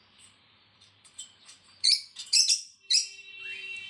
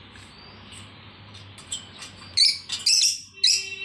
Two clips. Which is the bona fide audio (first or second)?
second